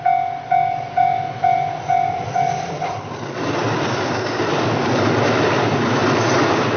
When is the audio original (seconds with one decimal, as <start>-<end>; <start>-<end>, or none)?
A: 0.0-1.0; 5.1-6.8